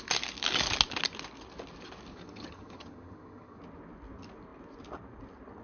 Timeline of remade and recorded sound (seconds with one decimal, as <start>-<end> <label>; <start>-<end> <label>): 0.0-2.1 recorded; 2.1-3.6 remade; 3.6-5.6 recorded